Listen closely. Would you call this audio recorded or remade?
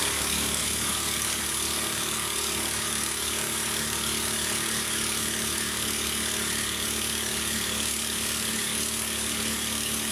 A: remade